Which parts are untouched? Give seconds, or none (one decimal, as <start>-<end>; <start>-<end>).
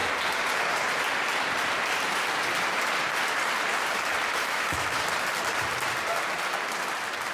0.0-4.4; 5.0-7.3